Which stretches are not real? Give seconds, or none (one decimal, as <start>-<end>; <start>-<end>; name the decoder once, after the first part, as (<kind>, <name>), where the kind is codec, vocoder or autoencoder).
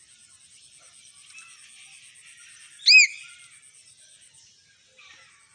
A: none